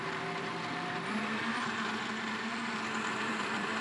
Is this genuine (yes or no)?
no